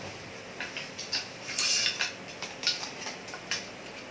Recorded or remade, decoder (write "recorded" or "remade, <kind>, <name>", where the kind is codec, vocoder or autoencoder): recorded